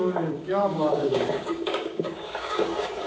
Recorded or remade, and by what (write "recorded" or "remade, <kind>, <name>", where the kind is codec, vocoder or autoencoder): remade, codec, DAC